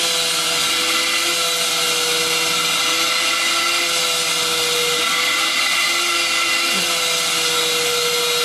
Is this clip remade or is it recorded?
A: recorded